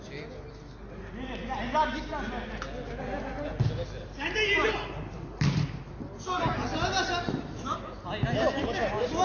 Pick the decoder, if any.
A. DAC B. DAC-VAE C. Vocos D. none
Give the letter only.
D